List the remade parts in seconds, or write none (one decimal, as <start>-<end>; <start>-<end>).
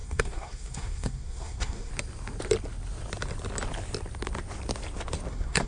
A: 0.0-1.9; 5.3-5.7